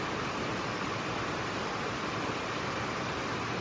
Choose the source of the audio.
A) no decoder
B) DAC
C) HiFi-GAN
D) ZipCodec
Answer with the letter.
A